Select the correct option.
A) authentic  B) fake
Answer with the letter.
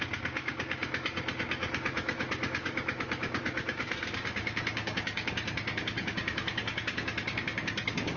B